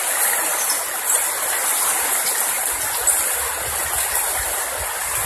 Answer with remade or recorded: recorded